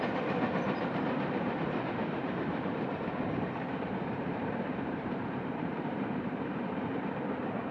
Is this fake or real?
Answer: fake